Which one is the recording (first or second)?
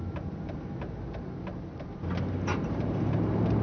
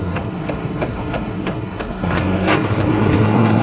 first